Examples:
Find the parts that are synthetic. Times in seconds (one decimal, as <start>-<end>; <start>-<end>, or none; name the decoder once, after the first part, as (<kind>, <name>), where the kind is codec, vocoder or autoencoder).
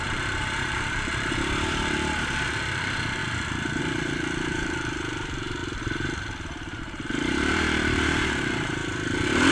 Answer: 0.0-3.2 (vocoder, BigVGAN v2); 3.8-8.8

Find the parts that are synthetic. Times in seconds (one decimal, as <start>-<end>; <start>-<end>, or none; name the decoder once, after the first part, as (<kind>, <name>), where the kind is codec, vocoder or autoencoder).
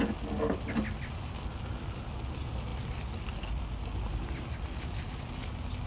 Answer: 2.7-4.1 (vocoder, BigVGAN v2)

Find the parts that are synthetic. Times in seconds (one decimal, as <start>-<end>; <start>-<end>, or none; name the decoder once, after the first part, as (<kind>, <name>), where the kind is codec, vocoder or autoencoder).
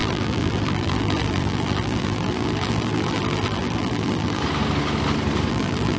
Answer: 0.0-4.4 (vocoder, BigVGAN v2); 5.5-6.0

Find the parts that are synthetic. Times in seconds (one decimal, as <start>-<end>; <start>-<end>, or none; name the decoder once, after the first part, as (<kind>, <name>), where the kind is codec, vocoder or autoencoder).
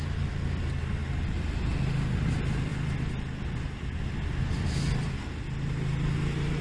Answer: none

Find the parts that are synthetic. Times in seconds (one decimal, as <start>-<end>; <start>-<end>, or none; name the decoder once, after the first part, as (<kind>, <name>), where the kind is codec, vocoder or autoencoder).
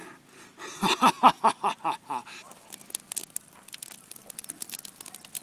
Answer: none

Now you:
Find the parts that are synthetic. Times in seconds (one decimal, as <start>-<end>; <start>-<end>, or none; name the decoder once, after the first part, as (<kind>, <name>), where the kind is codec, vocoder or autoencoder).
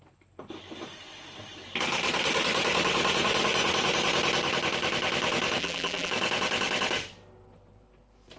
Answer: 5.6-6.1 (vocoder, BigVGAN v2)